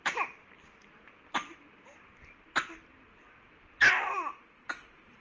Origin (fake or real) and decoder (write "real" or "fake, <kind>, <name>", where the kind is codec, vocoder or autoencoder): real